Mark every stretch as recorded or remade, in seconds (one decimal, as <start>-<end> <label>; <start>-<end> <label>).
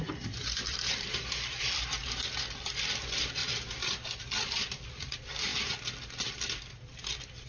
0.0-2.0 remade; 2.0-2.5 recorded; 2.5-5.5 remade; 5.5-7.5 recorded